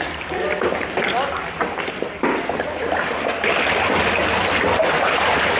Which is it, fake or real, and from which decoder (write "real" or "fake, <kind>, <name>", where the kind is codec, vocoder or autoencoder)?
real